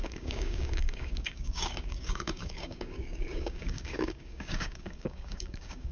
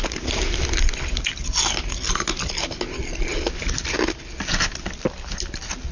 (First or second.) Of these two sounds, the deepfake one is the first